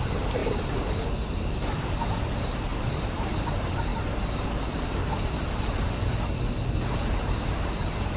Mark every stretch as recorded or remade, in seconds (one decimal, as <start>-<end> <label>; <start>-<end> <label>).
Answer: 0.0-0.4 recorded; 0.4-1.1 remade; 1.1-2.7 recorded; 2.7-3.4 remade; 3.4-8.2 recorded